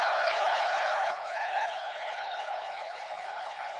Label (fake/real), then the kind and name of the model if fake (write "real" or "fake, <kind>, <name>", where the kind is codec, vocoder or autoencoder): fake, codec, HILCodec